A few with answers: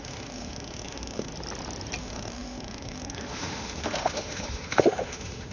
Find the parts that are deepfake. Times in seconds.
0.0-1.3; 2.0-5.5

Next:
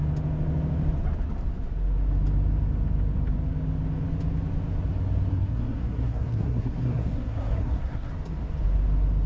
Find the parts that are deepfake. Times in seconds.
5.3-8.1